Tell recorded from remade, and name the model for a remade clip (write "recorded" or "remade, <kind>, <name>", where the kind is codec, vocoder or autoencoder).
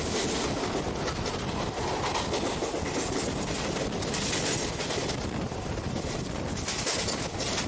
recorded